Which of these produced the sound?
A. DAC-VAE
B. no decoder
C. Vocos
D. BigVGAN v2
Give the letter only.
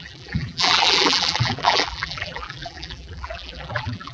D